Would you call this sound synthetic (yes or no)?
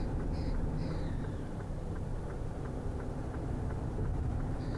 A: yes